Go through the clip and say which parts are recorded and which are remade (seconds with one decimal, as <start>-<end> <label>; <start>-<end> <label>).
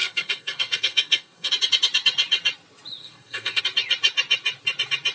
0.0-1.5 remade; 1.5-3.0 recorded; 3.0-3.6 remade; 3.6-5.1 recorded